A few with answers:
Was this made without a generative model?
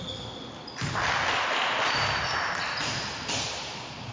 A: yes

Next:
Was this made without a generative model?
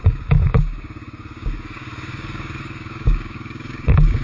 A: no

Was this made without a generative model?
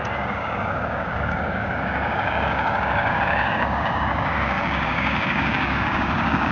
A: no